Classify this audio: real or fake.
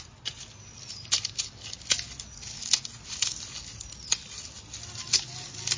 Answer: real